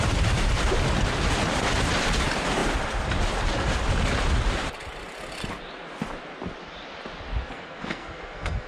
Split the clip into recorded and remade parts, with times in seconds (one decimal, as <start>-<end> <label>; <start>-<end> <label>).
0.0-7.4 recorded; 7.4-8.7 remade